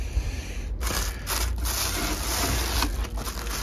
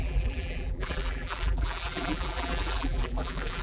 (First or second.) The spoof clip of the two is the second